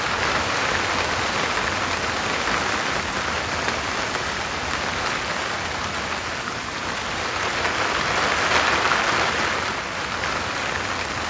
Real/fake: real